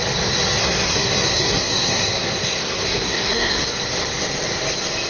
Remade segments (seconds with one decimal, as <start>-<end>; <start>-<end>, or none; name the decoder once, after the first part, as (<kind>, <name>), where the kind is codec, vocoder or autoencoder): 0.6-3.7 (codec, SNAC)